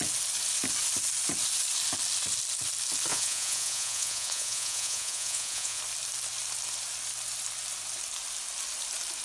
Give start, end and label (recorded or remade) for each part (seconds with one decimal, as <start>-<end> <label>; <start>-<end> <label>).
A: 0.0-3.1 recorded; 3.1-5.8 remade; 5.8-9.2 recorded